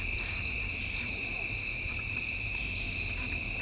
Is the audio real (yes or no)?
yes